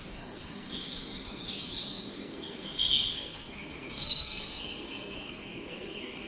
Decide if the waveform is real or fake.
fake